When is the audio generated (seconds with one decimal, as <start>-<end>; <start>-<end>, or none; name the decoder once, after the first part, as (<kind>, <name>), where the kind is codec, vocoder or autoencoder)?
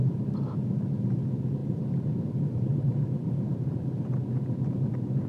1.6-4.8 (vocoder, BigVGAN v2)